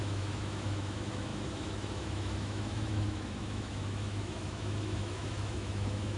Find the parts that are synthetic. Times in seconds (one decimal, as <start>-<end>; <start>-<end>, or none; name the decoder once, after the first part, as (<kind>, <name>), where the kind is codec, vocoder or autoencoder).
0.0-6.2 (autoencoder, DAC-VAE)